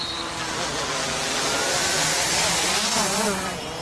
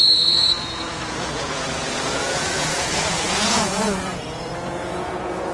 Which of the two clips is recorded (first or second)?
first